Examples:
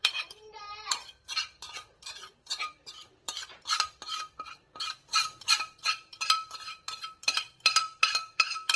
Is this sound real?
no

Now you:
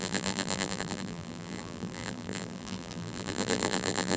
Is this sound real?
no